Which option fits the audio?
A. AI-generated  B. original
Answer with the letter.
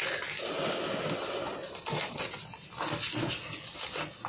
B